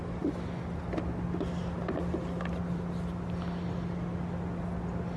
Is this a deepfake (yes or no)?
no